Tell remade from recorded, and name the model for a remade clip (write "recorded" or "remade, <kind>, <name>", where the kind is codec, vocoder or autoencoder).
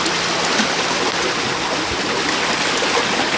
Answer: recorded